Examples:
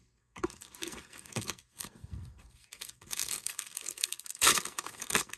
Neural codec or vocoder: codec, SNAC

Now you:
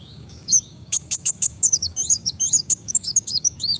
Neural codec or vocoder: codec, DAC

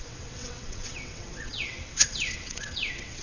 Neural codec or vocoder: vocoder, WaveNeXt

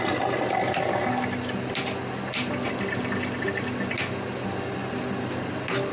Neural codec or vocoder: none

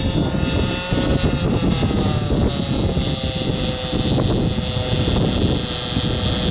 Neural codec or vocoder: none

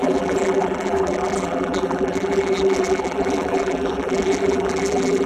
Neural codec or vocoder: vocoder, BigVGAN v2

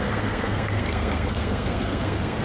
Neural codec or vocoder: codec, SNAC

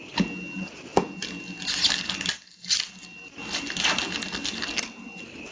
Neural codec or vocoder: none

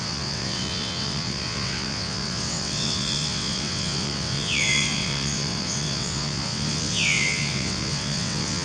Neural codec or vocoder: vocoder, WaveNeXt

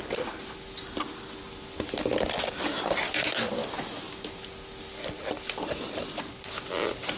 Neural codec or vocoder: none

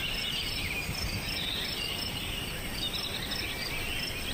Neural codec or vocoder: none